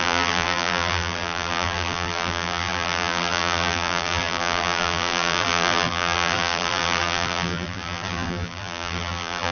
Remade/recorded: remade